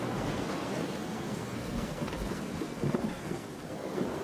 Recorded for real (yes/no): no